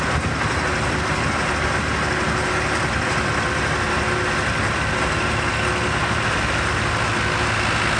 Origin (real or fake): real